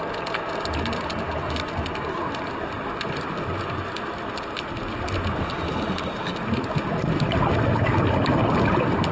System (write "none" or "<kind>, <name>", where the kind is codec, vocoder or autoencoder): none